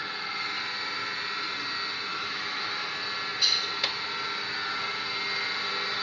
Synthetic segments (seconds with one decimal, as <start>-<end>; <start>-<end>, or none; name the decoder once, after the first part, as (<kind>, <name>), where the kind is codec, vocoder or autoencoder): 2.1-2.9 (autoencoder, DAC-VAE)